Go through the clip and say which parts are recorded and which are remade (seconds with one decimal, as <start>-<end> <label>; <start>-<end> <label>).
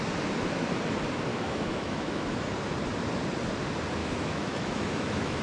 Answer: 0.0-1.3 recorded; 1.3-2.5 remade; 2.5-4.0 recorded; 4.0-5.4 remade